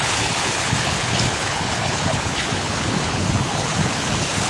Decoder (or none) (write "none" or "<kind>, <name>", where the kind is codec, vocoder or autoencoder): codec, HILCodec